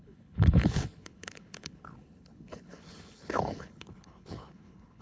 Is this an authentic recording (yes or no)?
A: no